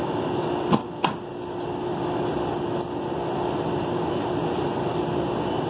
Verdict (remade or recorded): recorded